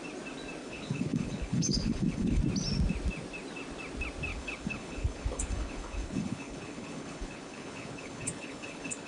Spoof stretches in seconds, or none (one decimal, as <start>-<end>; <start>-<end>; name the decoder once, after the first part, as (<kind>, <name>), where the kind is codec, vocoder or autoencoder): 0.6-2.4 (codec, HILCodec); 4.3-9.1